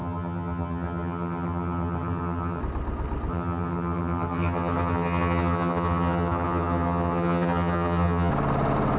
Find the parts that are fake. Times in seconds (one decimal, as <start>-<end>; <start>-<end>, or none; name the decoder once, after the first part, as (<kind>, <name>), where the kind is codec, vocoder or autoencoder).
0.0-2.6 (vocoder, HiFi-GAN); 3.3-8.3